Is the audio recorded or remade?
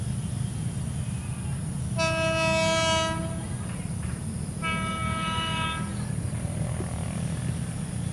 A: recorded